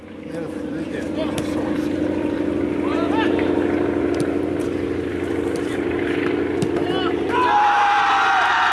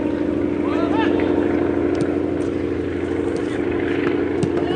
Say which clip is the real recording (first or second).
second